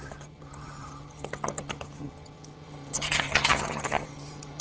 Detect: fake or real fake